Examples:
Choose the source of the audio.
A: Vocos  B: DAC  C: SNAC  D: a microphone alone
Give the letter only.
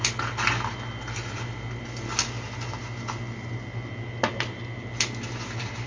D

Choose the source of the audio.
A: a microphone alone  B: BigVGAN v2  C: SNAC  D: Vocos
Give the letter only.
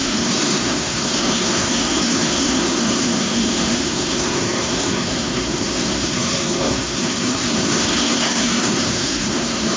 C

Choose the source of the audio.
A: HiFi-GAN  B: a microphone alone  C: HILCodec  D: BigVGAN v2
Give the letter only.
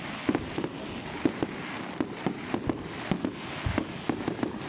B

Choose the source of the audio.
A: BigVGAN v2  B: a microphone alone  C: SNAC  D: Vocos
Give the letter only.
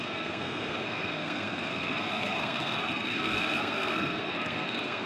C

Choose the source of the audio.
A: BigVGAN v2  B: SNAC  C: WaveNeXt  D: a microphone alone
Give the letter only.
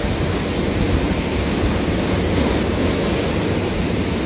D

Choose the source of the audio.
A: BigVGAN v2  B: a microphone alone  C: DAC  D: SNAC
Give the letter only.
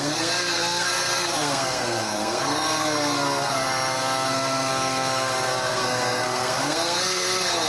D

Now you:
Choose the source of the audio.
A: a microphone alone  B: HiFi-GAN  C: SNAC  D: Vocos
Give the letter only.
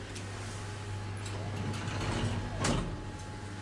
A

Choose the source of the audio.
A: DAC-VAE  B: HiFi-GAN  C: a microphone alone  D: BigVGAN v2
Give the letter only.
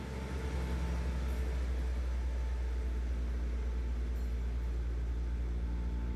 C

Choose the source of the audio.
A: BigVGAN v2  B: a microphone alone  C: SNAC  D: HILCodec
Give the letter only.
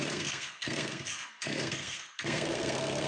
C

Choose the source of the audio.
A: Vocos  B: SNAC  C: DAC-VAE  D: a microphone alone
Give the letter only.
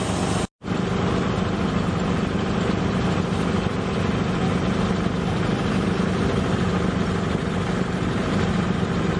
D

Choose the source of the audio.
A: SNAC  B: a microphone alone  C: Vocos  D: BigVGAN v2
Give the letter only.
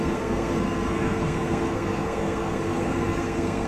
A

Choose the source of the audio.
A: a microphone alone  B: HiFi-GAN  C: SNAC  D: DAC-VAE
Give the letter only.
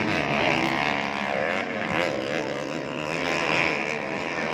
A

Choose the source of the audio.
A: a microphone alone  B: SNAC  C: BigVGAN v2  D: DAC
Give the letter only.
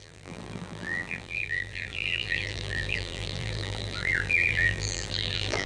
C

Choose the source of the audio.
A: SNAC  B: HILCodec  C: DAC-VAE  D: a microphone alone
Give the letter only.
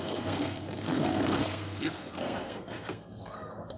A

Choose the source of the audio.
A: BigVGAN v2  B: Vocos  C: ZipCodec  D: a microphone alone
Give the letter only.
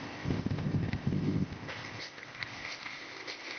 C